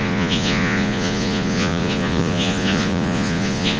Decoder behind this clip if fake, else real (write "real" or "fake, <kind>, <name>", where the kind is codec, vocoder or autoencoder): fake, vocoder, Vocos